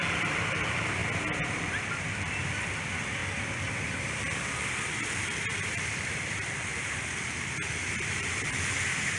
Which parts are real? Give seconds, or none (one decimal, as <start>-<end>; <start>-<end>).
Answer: 1.0-1.6; 3.2-4.0; 6.7-8.0